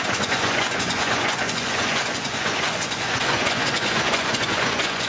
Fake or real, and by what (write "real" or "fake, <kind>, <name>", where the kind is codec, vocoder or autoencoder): fake, vocoder, Vocos